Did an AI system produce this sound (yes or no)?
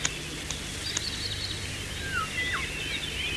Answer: no